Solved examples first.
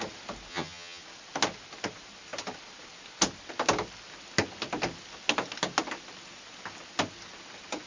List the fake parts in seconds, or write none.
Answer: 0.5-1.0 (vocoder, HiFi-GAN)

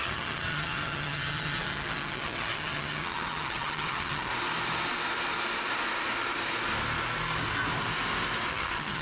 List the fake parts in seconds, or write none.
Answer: 0.0-4.3 (vocoder, HiFi-GAN); 8.5-9.0

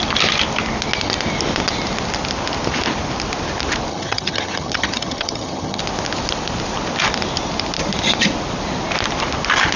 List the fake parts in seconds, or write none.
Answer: 3.9-5.8 (vocoder, HiFi-GAN)

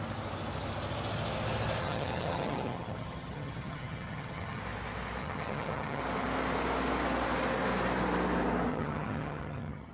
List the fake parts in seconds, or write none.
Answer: 1.8-4.6 (vocoder, HiFi-GAN); 5.2-6.0; 8.7-9.9

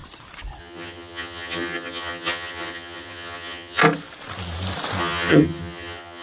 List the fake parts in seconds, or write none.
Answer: 0.6-3.8 (vocoder, HiFi-GAN); 5.0-6.2

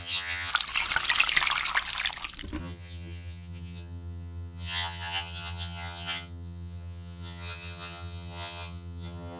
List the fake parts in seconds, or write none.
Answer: 0.0-0.5 (vocoder, HiFi-GAN); 2.6-9.4